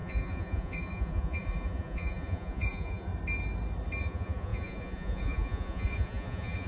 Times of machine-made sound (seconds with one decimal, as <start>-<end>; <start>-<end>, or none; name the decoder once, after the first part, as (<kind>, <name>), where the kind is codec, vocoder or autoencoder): 0.0-3.1 (vocoder, Vocos); 4.0-6.7